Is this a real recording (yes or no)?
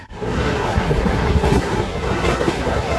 no